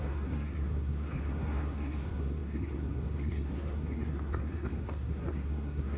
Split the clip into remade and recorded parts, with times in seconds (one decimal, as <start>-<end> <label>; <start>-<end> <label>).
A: 0.0-6.0 remade